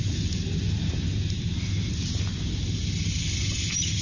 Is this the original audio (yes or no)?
yes